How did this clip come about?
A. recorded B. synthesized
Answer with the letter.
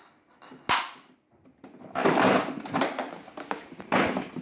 A